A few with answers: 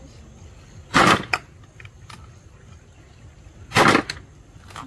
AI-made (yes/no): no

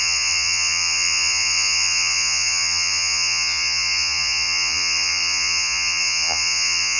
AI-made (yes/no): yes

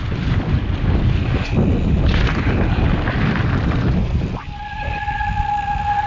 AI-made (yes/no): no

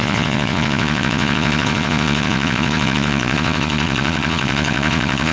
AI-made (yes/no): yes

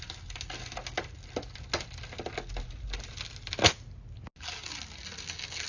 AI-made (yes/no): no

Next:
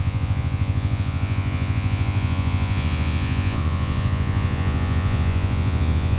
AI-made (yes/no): yes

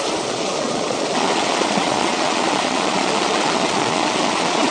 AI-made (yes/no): yes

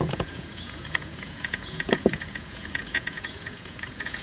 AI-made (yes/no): yes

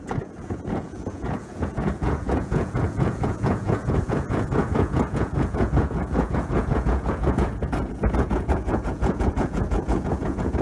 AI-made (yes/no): yes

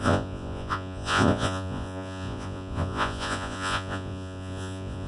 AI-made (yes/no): yes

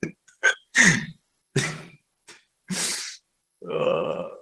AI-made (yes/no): yes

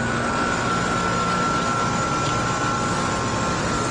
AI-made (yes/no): no